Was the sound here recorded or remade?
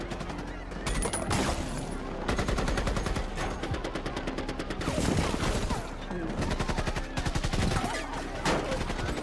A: recorded